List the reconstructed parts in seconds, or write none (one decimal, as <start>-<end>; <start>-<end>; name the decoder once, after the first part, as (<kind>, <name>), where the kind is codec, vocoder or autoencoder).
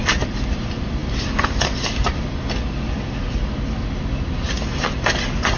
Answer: 1.0-2.4 (vocoder, BigVGAN v2)